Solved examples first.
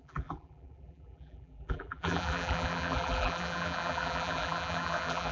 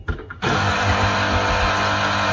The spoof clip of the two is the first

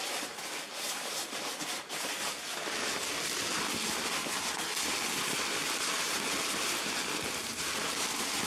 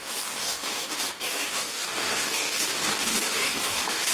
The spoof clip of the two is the second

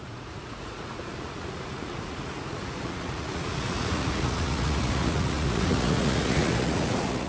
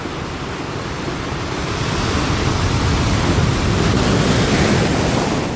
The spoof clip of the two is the first